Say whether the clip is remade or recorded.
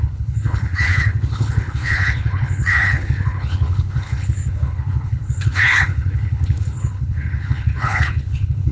remade